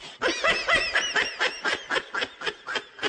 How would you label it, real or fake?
real